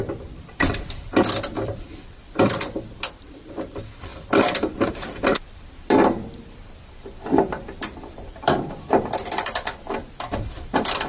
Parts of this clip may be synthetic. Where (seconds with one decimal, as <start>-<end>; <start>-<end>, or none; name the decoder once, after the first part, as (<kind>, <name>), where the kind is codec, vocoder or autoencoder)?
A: 0.0-11.1 (vocoder, BigVGAN v2)